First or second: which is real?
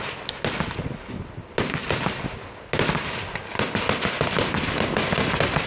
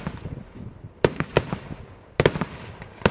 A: first